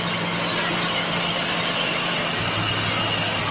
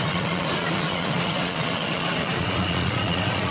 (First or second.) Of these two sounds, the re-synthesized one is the second